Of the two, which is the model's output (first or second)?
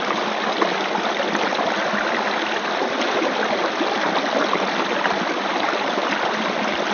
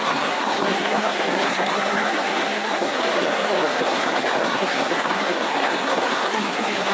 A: second